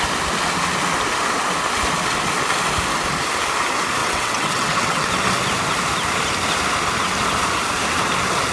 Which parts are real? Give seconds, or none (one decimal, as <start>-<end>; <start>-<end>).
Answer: 0.0-4.0; 5.1-8.5